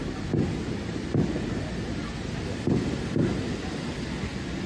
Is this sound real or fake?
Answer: real